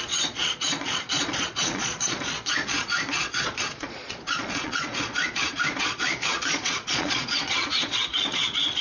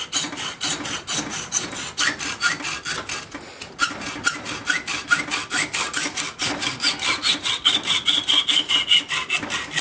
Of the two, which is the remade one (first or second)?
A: first